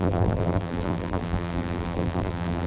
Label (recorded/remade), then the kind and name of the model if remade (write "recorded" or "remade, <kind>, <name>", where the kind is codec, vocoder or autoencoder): remade, vocoder, BigVGAN v2